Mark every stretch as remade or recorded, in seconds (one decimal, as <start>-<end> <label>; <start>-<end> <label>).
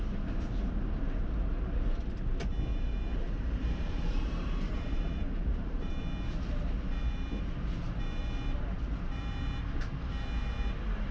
0.0-2.7 recorded; 2.7-5.9 remade; 5.9-11.1 recorded